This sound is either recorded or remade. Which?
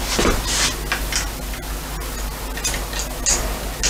recorded